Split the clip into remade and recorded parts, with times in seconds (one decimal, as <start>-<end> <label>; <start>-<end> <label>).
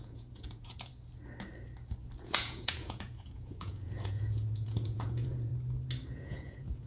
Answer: 0.0-0.9 remade; 0.9-2.2 recorded; 2.2-5.5 remade; 5.5-6.1 recorded; 6.1-6.9 remade